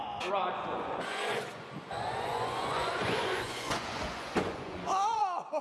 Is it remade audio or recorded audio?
remade